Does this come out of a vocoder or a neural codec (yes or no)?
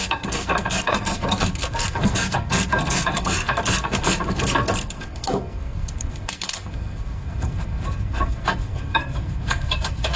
yes